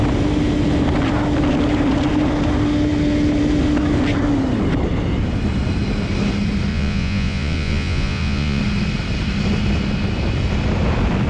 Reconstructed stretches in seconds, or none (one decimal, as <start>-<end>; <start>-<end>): 6.7-8.6